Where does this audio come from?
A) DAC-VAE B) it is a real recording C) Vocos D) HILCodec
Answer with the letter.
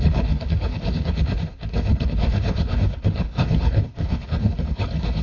D